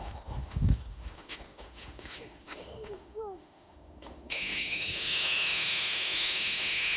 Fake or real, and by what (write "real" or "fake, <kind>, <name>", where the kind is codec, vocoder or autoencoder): fake, autoencoder, DAC-VAE